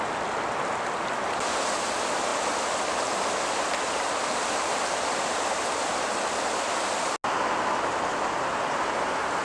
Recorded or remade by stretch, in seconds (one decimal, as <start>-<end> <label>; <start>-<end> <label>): 0.0-9.4 recorded